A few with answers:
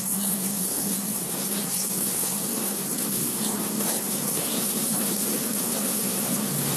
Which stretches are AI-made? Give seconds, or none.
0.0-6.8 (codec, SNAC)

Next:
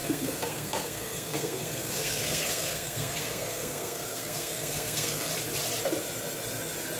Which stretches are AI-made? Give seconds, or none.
0.0-5.3 (codec, SNAC)

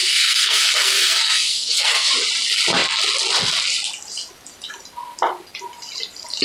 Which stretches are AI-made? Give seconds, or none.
0.0-2.1 (codec, SNAC)

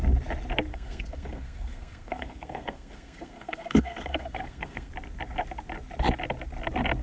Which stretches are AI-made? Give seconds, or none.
0.7-4.9 (codec, SNAC)

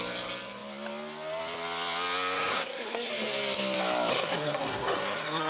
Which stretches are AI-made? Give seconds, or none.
2.5-3.1 (codec, SNAC); 4.1-5.5

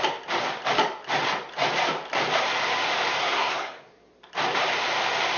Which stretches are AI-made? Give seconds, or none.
3.2-3.9 (codec, SNAC)

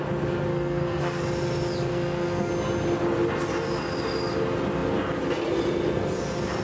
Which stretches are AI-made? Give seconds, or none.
0.5-1.2 (codec, SNAC); 1.9-2.5

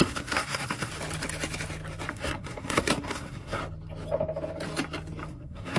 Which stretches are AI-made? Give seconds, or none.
0.0-0.9 (codec, SNAC); 2.1-3.6; 5.3-5.8